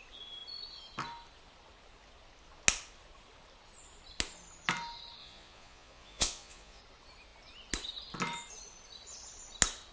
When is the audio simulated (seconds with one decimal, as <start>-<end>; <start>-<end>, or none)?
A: 5.2-6.8